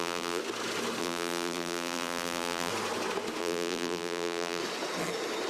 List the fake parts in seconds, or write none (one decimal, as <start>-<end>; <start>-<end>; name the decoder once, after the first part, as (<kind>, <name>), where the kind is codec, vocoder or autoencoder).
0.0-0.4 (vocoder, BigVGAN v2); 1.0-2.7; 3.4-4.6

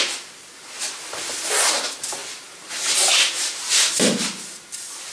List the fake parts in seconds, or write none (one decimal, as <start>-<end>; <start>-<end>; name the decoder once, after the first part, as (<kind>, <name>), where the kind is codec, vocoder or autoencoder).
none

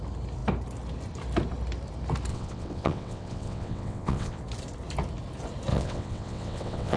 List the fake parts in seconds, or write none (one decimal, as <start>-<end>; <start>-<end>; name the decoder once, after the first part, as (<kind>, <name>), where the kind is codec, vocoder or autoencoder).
2.3-4.4 (vocoder, WaveNeXt); 5.7-7.0

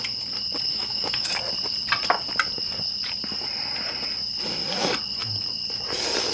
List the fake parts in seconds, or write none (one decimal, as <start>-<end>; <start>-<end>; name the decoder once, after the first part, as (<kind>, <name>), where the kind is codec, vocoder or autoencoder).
0.7-1.3 (autoencoder, DAC-VAE)